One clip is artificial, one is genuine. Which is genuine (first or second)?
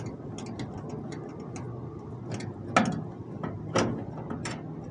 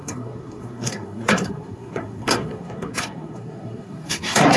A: first